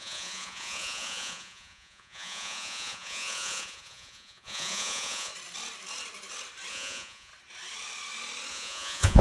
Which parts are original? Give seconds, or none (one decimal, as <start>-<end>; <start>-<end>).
5.3-6.7; 7.3-8.5